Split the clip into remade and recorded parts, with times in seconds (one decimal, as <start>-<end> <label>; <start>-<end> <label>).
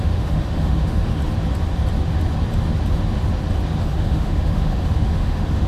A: 0.0-1.2 remade; 1.2-3.8 recorded; 3.8-5.7 remade